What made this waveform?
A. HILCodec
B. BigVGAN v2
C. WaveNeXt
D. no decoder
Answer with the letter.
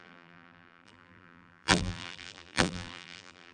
B